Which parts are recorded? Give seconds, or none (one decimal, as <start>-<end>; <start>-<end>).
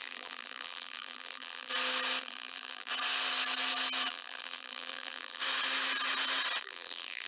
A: 1.7-2.2; 2.9-4.1; 5.4-6.6